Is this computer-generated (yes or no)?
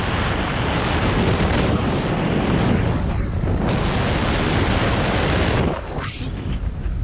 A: no